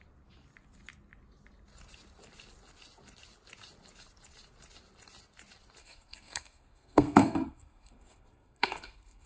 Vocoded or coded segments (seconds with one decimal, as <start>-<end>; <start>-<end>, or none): 5.8-9.3